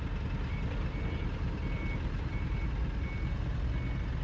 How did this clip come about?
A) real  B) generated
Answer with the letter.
A